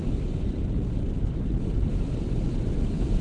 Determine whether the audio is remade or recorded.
recorded